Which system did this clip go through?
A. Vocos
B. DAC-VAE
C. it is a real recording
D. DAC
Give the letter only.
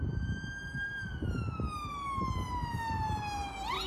C